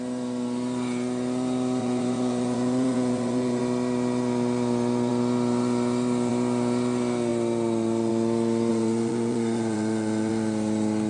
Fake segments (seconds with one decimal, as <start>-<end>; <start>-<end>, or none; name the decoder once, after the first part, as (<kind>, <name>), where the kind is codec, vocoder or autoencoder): 1.8-3.6 (vocoder, Vocos); 8.7-10.3